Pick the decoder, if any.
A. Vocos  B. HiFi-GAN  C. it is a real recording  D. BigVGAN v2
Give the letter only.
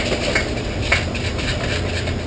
C